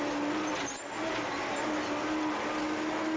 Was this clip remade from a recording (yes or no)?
no